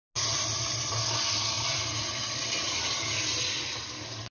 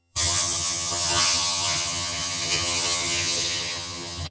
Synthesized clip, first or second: second